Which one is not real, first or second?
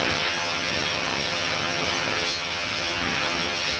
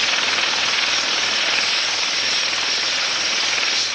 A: first